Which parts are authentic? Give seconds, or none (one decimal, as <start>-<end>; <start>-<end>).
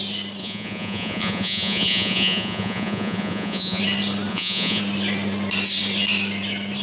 0.0-0.4; 3.8-4.3; 4.8-6.8